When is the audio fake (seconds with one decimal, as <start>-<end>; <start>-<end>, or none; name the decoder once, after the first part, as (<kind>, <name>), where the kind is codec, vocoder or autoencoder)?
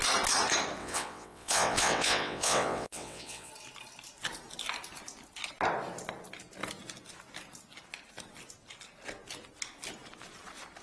0.8-3.5 (vocoder, WaveNeXt)